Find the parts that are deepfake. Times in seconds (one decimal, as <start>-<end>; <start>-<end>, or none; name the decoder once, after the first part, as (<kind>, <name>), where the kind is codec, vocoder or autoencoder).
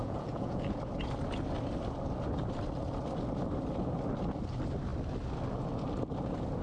0.0-0.8 (vocoder, Vocos)